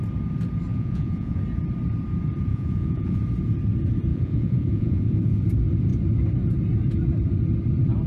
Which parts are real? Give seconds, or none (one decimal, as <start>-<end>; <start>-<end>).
0.0-0.7; 1.4-2.5; 3.2-4.1; 5.4-8.1